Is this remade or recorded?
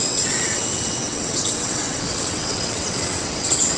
remade